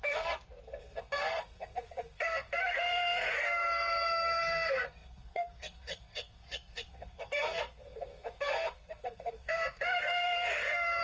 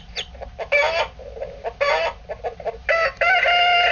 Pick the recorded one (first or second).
second